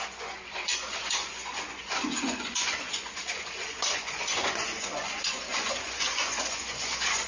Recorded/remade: remade